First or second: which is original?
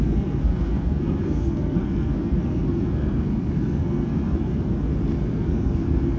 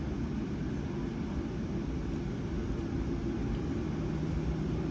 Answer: second